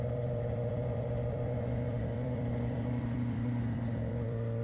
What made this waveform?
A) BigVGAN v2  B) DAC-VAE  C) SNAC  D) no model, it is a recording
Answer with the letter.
A